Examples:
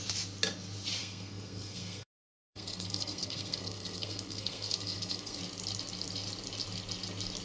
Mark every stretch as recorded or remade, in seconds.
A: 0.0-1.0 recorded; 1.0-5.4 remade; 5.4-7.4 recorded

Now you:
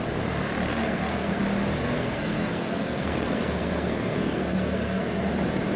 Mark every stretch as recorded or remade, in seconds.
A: 0.0-0.7 recorded; 0.7-1.4 remade; 1.4-1.8 recorded; 1.8-5.3 remade; 5.3-5.8 recorded

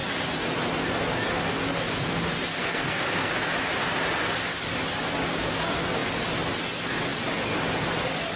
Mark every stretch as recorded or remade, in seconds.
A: 0.0-2.6 recorded; 2.6-3.3 remade; 3.3-8.4 recorded

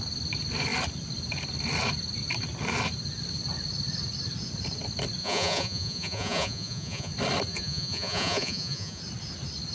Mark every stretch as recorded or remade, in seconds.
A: 0.0-5.2 recorded; 5.2-7.1 remade; 7.1-7.5 recorded; 7.5-9.0 remade; 9.0-9.7 recorded

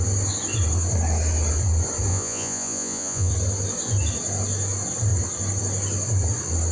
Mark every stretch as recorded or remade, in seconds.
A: 0.0-2.1 recorded; 2.1-3.3 remade; 3.3-6.7 recorded

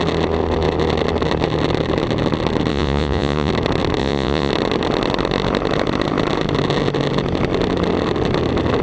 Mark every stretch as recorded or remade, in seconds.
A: 0.0-2.7 recorded; 2.7-3.5 remade; 3.5-4.0 recorded; 4.0-4.5 remade; 4.5-8.8 recorded